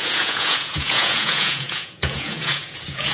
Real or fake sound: fake